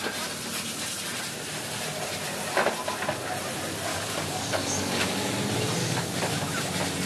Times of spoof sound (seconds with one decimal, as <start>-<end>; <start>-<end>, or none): 3.9-5.3; 5.8-6.5